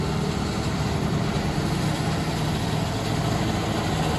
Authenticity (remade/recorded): recorded